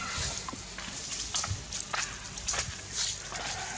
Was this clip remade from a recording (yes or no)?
no